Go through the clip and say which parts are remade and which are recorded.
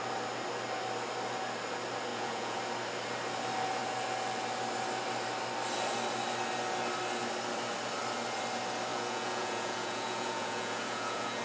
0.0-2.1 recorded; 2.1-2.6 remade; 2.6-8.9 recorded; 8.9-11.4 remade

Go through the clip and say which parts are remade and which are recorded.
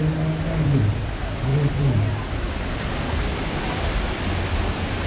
0.0-5.1 recorded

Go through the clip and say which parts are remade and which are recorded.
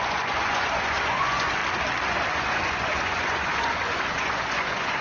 0.0-1.6 remade; 1.6-2.3 recorded; 2.3-5.0 remade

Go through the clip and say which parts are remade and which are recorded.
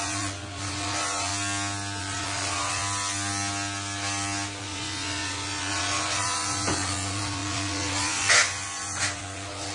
0.0-1.3 remade; 1.3-2.0 recorded; 2.0-2.8 remade; 2.8-4.6 recorded; 4.6-9.7 remade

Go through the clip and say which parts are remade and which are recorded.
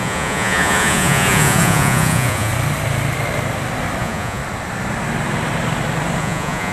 0.0-2.5 remade; 2.5-4.0 recorded; 4.0-4.4 remade; 4.4-6.2 recorded; 6.2-6.7 remade